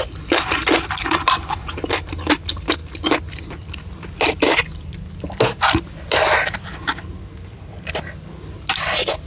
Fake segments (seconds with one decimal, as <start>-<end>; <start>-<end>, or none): none